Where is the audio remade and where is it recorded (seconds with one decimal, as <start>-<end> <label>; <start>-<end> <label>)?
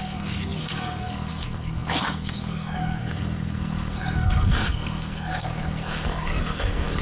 0.0-7.0 remade